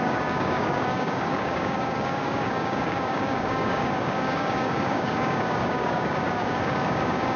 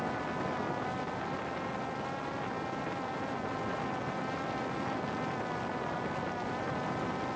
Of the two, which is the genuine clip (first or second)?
second